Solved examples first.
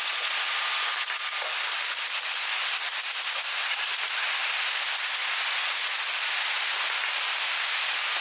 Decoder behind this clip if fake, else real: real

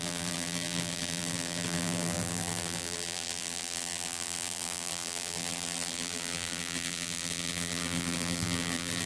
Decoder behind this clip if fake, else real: fake, vocoder, BigVGAN v2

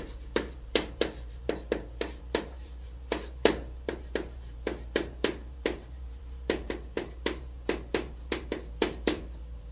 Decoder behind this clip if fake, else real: fake, vocoder, BigVGAN v2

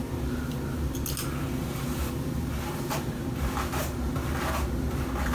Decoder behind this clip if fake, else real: real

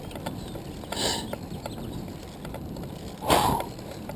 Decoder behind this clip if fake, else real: real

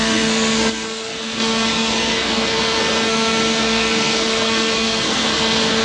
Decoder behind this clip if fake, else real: fake, codec, SNAC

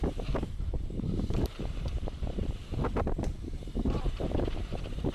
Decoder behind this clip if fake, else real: fake, vocoder, BigVGAN v2